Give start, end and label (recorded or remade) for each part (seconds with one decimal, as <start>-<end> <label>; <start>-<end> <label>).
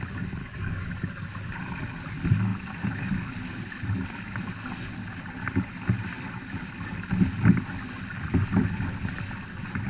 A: 0.0-0.4 recorded; 0.4-0.9 remade; 0.9-9.9 recorded